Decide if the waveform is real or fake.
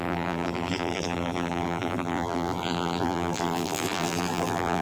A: fake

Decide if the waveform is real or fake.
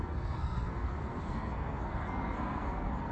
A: fake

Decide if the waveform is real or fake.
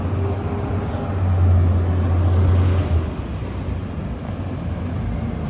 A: real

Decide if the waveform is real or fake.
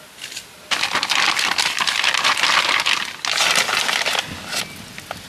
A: real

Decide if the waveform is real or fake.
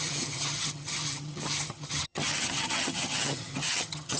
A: fake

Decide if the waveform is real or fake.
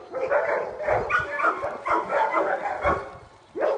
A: real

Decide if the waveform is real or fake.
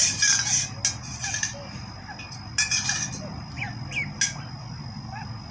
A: real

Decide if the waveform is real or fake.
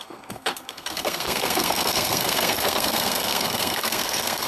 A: fake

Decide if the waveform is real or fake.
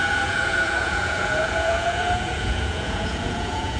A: fake